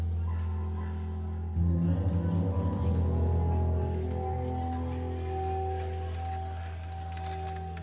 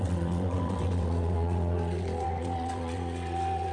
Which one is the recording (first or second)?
first